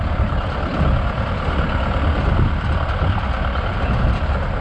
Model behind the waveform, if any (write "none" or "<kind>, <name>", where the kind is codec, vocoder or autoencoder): none